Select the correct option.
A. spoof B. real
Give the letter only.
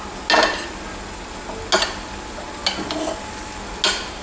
B